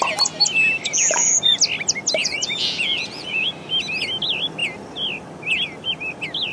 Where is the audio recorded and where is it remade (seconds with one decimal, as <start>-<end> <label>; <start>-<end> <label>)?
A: 0.0-0.9 recorded; 0.9-1.6 remade; 1.6-2.2 recorded; 2.2-3.5 remade; 3.5-6.5 recorded